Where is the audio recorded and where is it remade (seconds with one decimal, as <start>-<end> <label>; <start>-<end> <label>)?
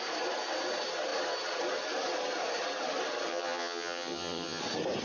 0.0-3.3 recorded; 3.3-4.6 remade; 4.6-5.0 recorded